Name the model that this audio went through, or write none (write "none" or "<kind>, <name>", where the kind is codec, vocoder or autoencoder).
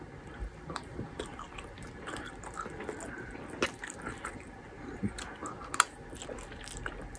none